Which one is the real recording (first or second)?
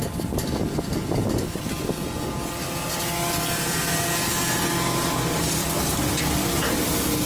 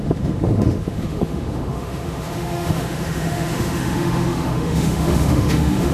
first